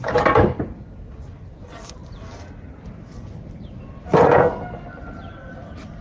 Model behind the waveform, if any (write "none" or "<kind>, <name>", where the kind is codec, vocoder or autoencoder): none